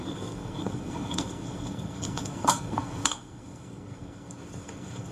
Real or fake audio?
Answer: fake